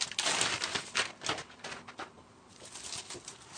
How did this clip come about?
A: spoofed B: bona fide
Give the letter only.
B